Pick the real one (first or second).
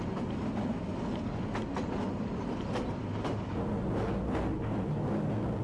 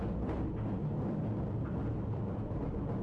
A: first